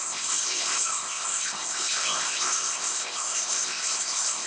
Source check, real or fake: fake